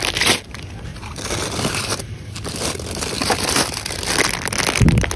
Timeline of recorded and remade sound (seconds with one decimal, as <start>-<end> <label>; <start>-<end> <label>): 0.0-0.9 recorded; 0.9-4.0 remade; 4.0-5.2 recorded